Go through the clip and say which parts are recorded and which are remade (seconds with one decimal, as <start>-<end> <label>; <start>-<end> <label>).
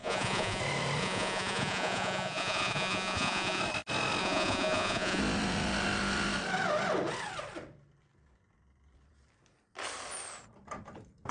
0.0-0.6 remade; 0.6-1.0 recorded; 1.0-3.6 remade; 3.6-4.2 recorded; 4.2-5.2 remade; 5.2-11.3 recorded